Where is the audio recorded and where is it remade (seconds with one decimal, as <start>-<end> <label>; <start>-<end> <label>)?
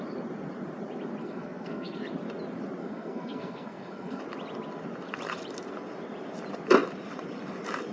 0.0-1.2 recorded; 1.2-2.0 remade; 2.0-2.8 recorded; 2.8-4.2 remade; 4.2-7.9 recorded